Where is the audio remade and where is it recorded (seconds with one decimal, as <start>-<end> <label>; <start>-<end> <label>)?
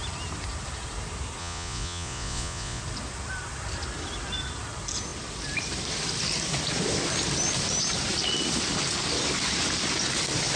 0.0-1.4 recorded; 1.4-2.8 remade; 2.8-10.6 recorded